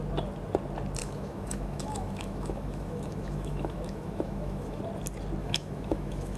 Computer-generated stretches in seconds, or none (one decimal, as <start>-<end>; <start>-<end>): 1.0-4.8; 5.4-6.4